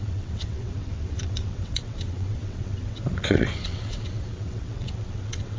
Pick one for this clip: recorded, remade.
remade